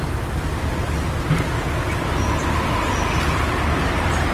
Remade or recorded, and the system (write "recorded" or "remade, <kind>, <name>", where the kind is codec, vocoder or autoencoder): recorded